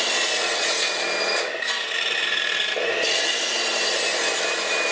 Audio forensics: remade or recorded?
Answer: recorded